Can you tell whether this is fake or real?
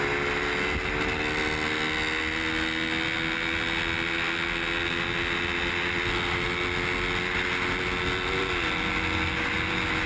real